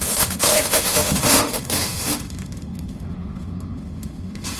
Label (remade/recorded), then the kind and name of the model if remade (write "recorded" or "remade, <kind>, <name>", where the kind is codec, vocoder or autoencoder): remade, autoencoder, DAC-VAE